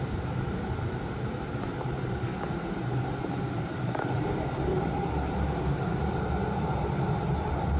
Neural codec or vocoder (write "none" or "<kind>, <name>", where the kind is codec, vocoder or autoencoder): vocoder, BigVGAN v2